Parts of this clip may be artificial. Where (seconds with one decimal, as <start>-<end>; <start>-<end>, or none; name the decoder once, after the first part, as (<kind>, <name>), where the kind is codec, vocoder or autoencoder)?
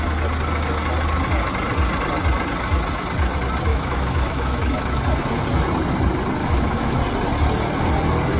3.7-5.0 (autoencoder, DAC-VAE); 6.4-7.0